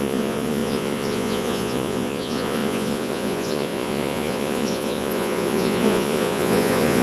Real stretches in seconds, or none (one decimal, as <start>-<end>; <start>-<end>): none